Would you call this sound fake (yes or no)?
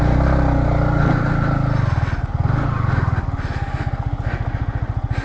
no